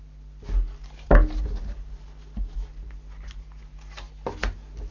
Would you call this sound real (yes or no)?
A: yes